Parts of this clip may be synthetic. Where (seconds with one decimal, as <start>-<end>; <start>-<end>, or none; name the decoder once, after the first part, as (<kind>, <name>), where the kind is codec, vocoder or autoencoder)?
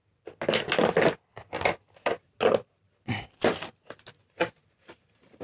none